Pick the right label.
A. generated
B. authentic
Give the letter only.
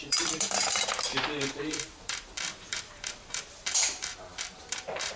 A